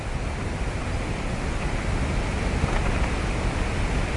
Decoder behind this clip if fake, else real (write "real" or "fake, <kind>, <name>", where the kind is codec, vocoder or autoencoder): real